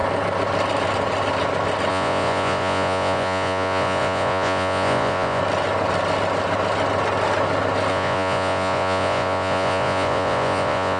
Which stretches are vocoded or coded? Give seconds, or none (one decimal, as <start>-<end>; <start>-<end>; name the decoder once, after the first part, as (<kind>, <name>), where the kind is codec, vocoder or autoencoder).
1.9-5.4 (vocoder, Vocos); 7.9-11.0